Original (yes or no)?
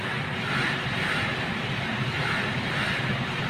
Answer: yes